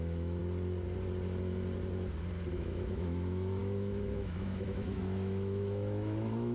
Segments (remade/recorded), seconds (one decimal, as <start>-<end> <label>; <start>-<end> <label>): 0.0-0.4 remade; 0.4-2.5 recorded; 2.5-6.5 remade